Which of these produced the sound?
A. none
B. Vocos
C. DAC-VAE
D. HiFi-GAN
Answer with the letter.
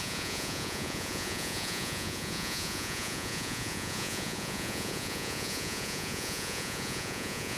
B